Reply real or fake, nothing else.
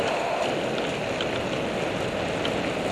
real